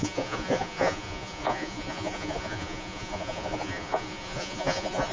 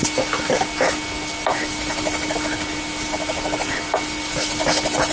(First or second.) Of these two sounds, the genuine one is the second